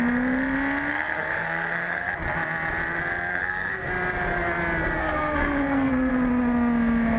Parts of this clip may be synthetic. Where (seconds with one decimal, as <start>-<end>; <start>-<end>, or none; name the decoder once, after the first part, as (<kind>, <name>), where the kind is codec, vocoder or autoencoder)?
0.9-2.1 (codec, SNAC); 3.3-3.9; 5.0-6.1